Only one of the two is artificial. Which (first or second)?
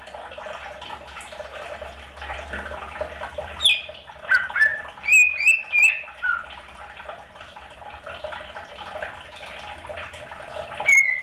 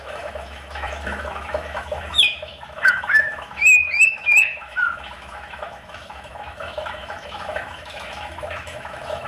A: second